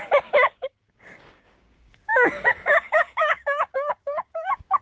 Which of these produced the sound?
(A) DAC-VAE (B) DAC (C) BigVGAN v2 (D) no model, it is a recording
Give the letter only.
B